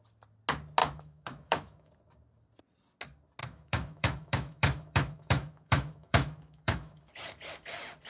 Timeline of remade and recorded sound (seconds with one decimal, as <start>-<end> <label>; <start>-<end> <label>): 0.0-0.8 recorded; 0.8-1.9 remade; 1.9-3.4 recorded; 3.4-7.0 remade; 7.0-8.1 recorded